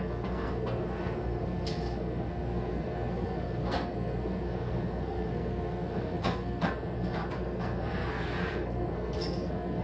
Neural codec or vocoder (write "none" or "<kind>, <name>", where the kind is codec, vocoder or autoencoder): codec, SNAC